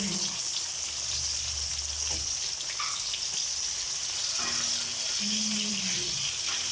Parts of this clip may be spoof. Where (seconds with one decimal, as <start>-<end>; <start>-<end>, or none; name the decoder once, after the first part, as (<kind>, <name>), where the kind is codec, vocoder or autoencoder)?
none